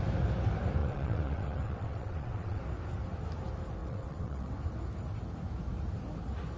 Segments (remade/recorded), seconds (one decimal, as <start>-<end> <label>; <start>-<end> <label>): 0.0-0.8 recorded; 0.8-2.6 remade; 2.6-3.8 recorded; 3.8-4.5 remade; 4.5-6.6 recorded